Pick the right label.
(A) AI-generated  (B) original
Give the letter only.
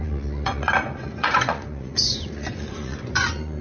A